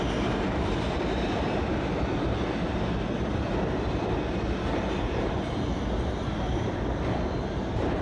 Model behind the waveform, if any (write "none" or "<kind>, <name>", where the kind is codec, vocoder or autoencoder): none